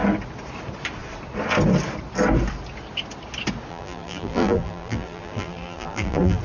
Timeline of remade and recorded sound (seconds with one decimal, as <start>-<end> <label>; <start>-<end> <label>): 0.0-3.7 recorded; 3.7-6.4 remade